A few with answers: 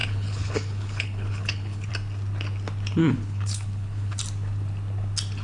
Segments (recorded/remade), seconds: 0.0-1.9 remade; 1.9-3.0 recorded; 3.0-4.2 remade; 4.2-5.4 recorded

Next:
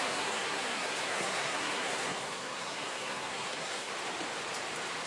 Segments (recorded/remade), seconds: 0.0-3.9 remade; 3.9-5.1 recorded

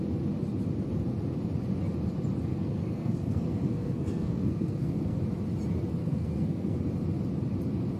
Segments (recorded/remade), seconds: 0.0-2.5 recorded; 2.5-5.2 remade; 5.2-6.0 recorded; 6.0-6.8 remade; 6.8-8.0 recorded

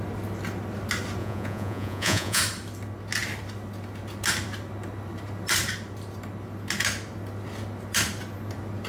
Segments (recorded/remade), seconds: 0.0-1.2 recorded; 1.2-2.4 remade; 2.4-8.9 recorded

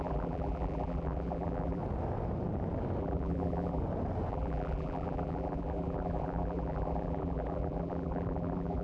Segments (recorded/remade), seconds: 0.0-1.8 remade; 1.8-3.0 recorded; 3.0-3.8 remade; 3.8-4.3 recorded; 4.3-8.8 remade